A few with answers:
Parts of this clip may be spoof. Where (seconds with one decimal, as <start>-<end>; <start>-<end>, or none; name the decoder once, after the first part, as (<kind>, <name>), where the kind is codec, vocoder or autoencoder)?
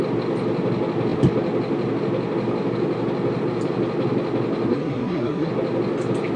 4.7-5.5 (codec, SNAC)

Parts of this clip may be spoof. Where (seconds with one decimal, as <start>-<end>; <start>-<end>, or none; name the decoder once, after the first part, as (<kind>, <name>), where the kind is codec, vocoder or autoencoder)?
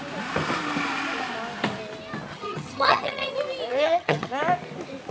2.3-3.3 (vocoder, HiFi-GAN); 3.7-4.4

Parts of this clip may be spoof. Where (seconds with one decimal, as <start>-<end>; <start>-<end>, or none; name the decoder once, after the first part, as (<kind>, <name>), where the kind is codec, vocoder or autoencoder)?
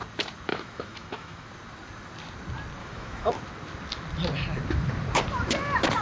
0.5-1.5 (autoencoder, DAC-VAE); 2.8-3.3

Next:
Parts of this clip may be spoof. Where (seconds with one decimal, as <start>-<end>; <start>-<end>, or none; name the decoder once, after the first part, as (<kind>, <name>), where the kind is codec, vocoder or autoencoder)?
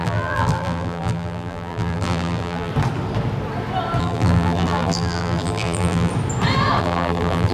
0.0-2.7 (vocoder, BigVGAN v2); 4.0-6.1; 6.8-7.5